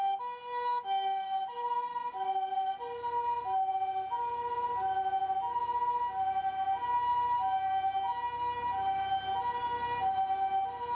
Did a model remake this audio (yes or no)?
no